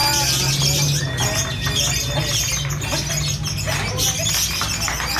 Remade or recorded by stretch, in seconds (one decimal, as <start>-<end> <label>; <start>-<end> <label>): 0.0-5.2 recorded